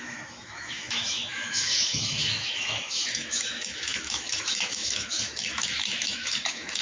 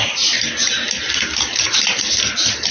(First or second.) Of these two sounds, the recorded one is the second